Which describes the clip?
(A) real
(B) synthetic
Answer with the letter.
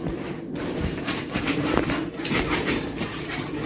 A